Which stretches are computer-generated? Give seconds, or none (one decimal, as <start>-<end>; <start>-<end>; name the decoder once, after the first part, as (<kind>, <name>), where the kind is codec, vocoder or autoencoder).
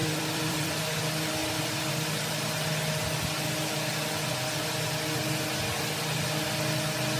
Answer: 0.0-0.9 (vocoder, BigVGAN v2); 1.4-1.9